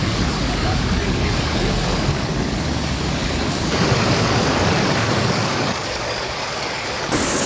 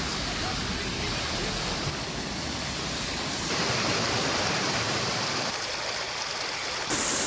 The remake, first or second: first